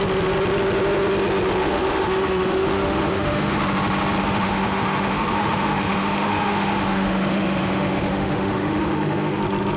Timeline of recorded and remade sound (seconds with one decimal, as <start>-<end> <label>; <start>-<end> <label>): 0.0-1.6 recorded; 1.6-3.6 remade; 3.6-4.2 recorded; 4.2-9.4 remade; 9.4-9.8 recorded